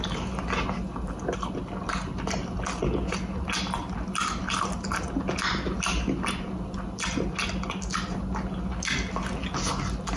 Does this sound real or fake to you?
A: real